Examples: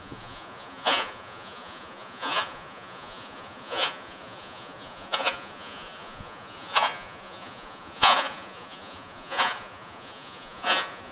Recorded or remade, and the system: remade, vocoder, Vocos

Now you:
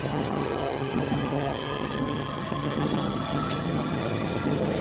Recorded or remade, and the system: remade, vocoder, HiFi-GAN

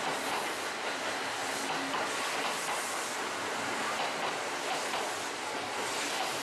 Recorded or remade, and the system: recorded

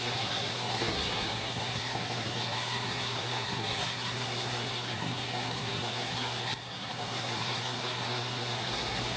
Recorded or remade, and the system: remade, codec, SNAC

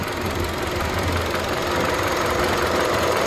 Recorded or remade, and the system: recorded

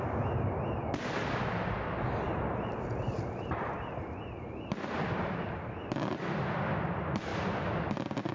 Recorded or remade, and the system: recorded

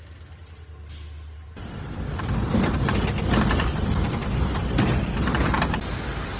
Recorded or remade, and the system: recorded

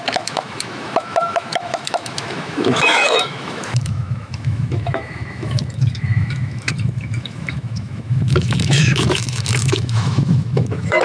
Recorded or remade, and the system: remade, autoencoder, DAC-VAE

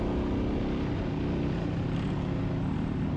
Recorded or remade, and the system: recorded